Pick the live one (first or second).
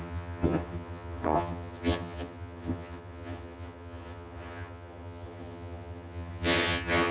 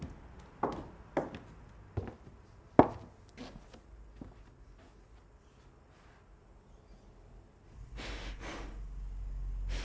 second